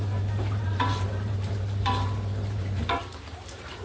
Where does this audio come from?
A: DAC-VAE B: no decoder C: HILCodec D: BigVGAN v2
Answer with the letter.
D